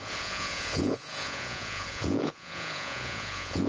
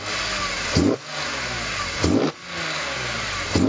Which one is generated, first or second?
first